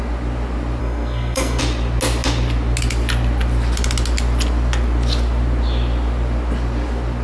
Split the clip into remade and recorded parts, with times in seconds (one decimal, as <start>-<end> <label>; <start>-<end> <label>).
0.0-0.8 recorded; 0.8-1.6 remade; 1.6-7.2 recorded